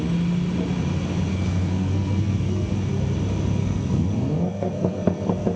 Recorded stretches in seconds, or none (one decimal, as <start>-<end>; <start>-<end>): 0.0-1.3; 2.9-3.6

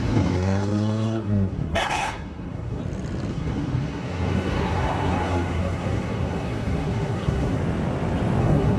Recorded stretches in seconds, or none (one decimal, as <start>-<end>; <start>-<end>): 2.8-3.3; 7.6-8.4